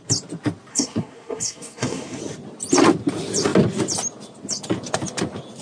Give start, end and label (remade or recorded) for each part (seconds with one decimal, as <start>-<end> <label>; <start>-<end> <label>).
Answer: 0.0-0.7 recorded; 0.7-2.2 remade; 2.2-5.6 recorded